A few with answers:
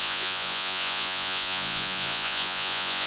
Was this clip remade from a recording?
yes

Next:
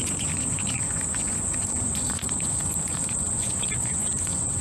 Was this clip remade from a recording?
yes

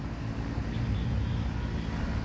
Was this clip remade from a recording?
no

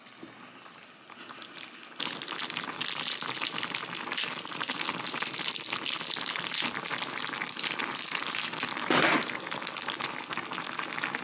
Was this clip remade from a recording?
no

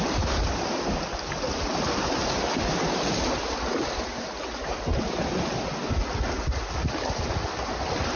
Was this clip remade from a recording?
no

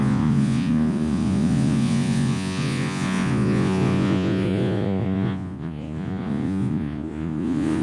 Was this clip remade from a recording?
yes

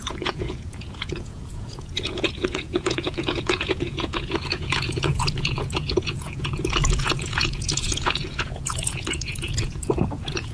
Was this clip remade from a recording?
yes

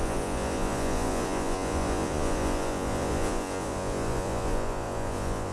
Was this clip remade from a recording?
yes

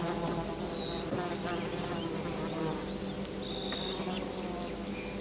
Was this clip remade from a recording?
no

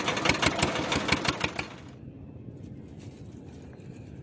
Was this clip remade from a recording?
no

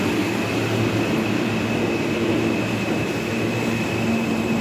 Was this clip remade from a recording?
no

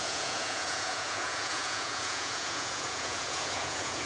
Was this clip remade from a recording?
yes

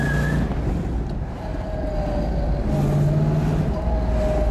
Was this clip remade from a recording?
no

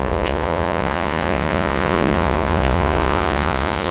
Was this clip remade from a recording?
yes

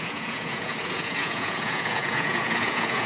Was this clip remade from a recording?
yes